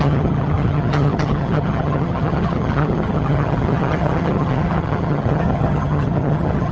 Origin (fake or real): fake